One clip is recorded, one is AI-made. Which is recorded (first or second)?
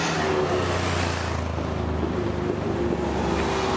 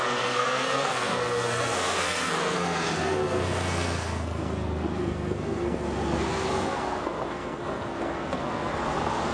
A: first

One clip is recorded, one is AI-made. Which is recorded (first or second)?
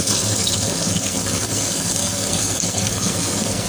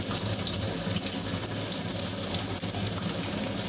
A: second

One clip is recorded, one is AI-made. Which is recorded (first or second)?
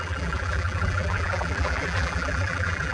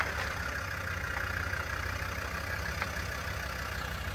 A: second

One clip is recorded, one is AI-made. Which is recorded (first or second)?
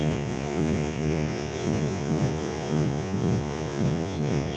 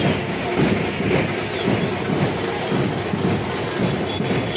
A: second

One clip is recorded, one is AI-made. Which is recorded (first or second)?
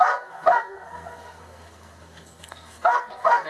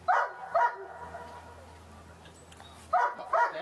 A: second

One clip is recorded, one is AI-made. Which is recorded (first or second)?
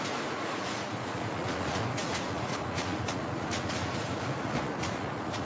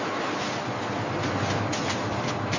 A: second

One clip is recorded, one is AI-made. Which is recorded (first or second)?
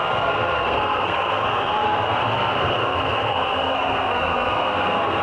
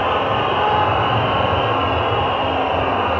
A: second